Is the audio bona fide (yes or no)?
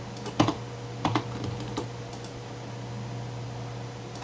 yes